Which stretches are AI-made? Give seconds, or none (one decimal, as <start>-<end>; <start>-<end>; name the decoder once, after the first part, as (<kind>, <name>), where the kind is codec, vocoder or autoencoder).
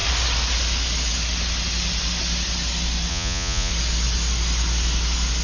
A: 3.1-3.7 (vocoder, Vocos)